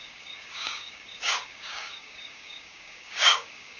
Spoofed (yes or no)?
yes